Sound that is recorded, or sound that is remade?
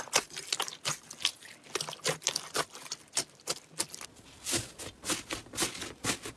recorded